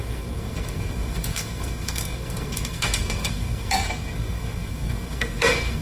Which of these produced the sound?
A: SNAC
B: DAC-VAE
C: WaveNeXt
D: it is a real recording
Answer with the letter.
A